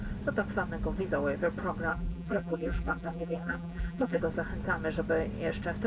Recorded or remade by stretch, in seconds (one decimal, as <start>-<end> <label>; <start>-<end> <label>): 0.0-1.9 recorded; 1.9-4.2 remade; 4.2-5.9 recorded